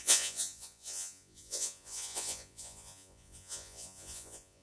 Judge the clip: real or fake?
fake